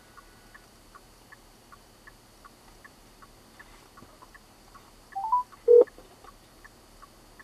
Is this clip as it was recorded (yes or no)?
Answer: yes